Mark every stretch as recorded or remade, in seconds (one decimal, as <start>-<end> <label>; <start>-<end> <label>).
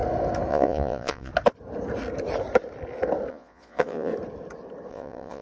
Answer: 0.0-0.5 recorded; 0.5-1.3 remade; 1.3-3.3 recorded; 3.3-4.1 remade; 4.1-4.9 recorded; 4.9-5.4 remade